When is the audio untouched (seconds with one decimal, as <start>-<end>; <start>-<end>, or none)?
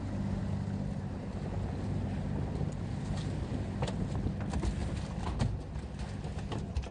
0.0-6.9